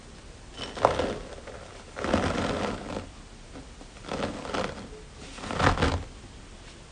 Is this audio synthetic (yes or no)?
no